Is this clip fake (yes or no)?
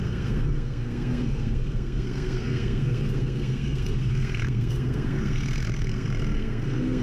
yes